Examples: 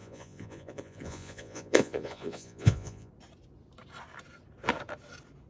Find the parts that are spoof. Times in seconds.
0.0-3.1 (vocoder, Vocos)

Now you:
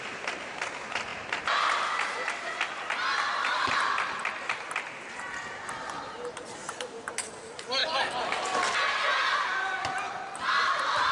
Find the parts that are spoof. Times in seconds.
none

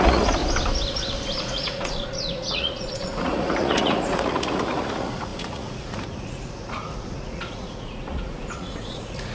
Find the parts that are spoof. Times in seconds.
0.0-0.4 (vocoder, Vocos); 1.4-9.3

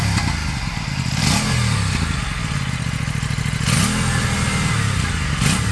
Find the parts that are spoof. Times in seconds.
none

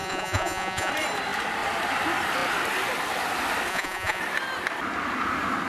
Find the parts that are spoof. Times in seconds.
0.0-0.9 (vocoder, Vocos); 3.7-4.2